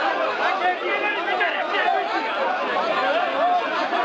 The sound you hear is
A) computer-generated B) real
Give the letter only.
B